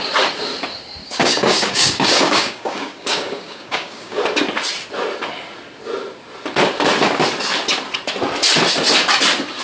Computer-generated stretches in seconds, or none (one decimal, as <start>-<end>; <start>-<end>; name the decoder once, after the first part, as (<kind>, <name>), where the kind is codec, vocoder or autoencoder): 1.0-4.2 (codec, DAC)